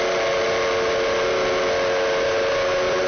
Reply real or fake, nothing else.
real